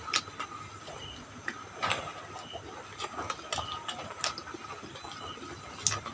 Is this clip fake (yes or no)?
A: no